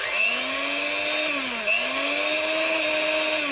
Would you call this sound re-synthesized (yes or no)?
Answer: no